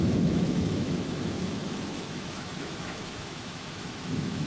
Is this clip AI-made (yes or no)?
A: yes